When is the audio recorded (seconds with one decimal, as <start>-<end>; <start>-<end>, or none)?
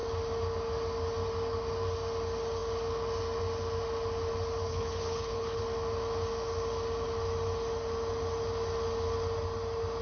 0.0-4.7; 5.6-10.0